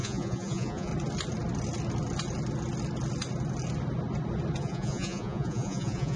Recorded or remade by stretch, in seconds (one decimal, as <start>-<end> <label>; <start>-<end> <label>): 0.0-0.9 remade; 0.9-4.6 recorded; 4.6-6.2 remade